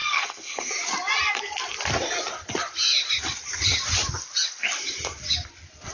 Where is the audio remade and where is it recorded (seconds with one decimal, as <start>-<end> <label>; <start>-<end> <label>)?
0.0-0.7 remade; 0.7-5.9 recorded